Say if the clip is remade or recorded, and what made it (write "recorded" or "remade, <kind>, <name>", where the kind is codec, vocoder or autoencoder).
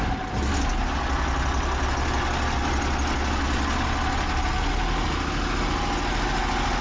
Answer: recorded